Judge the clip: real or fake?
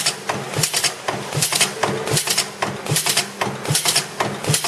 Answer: real